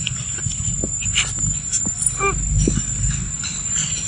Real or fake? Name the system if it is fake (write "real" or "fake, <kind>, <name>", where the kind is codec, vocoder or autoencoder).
real